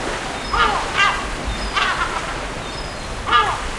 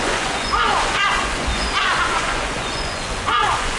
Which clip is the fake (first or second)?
second